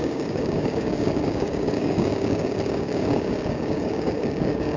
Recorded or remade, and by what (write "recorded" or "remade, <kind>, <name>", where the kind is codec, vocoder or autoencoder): remade, codec, DAC